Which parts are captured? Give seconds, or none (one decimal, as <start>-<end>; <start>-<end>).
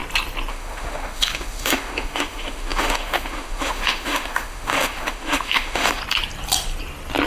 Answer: 0.0-0.5; 6.0-7.3